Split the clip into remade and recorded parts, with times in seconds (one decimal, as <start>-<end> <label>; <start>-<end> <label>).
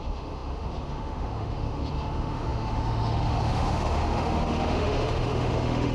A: 0.0-5.9 remade